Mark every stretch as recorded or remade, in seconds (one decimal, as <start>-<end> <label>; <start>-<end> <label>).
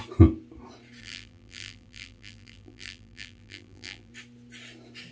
0.0-1.0 recorded; 1.0-4.1 remade; 4.1-5.1 recorded